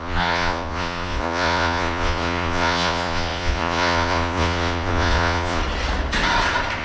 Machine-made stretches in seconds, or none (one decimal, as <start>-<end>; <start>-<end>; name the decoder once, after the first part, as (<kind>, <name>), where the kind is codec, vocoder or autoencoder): 0.0-5.6 (vocoder, Vocos)